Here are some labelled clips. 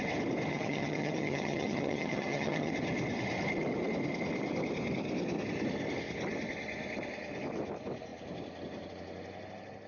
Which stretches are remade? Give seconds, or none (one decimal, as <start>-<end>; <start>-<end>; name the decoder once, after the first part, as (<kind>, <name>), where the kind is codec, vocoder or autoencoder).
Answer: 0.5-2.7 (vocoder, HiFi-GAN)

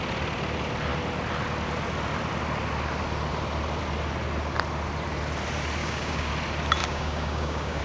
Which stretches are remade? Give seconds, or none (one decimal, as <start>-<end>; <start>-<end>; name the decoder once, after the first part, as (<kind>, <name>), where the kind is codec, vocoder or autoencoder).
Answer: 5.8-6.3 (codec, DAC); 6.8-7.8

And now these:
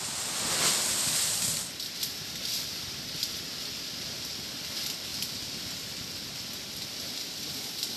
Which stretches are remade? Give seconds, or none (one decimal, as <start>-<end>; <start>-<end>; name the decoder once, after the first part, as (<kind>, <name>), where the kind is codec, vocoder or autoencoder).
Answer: 5.1-6.0 (vocoder, BigVGAN v2)